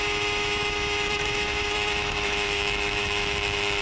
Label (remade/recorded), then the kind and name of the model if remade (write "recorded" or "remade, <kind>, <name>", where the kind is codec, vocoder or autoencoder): remade, autoencoder, DAC-VAE